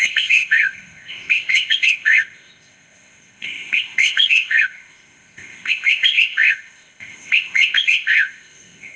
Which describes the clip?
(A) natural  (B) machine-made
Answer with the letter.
B